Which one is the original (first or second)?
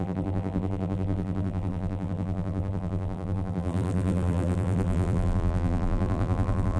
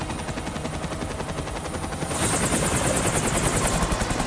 second